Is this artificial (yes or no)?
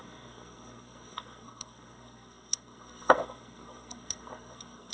yes